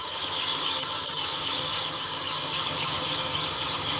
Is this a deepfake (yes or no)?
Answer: yes